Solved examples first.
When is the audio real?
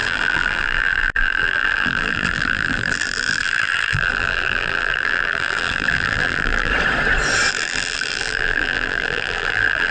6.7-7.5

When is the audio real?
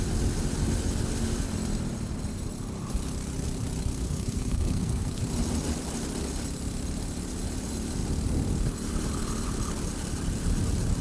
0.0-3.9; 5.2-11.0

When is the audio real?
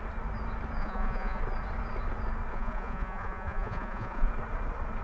0.0-0.8; 1.4-2.5; 4.3-5.0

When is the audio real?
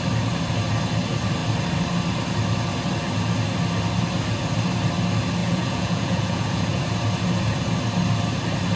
0.0-5.4; 6.8-8.8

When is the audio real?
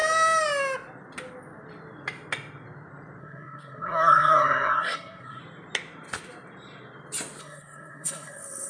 0.0-3.2; 5.4-7.4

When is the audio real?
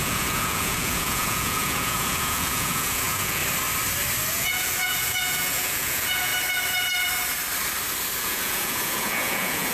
3.4-4.3; 6.3-8.2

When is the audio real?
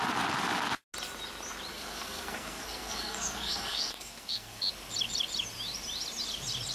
0.0-1.7; 4.6-6.7